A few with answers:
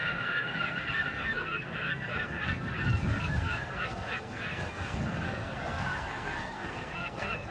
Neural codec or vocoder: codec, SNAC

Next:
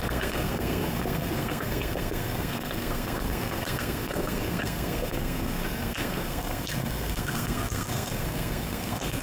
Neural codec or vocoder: codec, SNAC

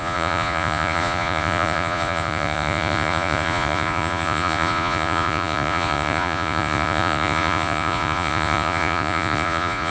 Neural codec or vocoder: vocoder, Vocos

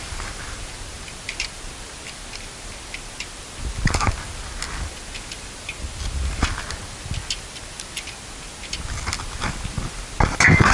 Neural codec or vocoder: none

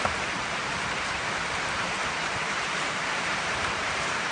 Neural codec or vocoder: vocoder, BigVGAN v2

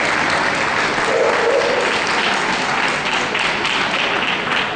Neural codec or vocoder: none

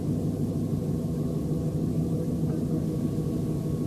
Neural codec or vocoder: none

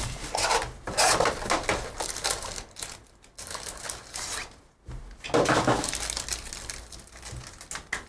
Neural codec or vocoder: none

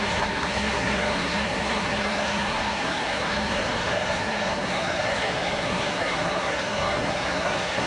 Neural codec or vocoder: codec, SNAC